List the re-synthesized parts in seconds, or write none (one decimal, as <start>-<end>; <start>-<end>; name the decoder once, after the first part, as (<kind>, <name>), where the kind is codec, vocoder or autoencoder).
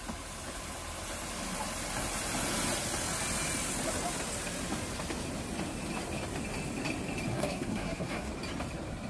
7.3-8.3 (codec, SNAC)